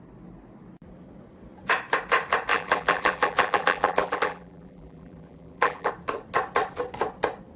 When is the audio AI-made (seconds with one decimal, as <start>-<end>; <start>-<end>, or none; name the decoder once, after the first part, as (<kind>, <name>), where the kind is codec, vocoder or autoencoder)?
2.5-5.9 (vocoder, BigVGAN v2)